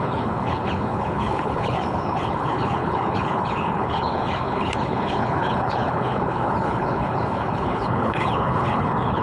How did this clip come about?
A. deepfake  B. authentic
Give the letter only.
A